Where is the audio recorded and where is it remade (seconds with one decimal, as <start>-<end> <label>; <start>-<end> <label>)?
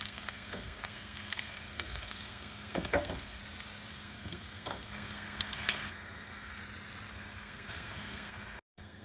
0.0-3.4 remade; 3.4-3.9 recorded; 3.9-6.6 remade; 6.6-7.1 recorded; 7.1-9.0 remade